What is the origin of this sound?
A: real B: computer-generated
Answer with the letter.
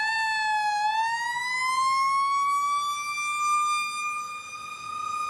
A